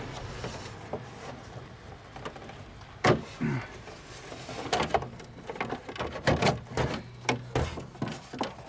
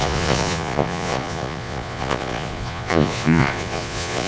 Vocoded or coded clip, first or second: second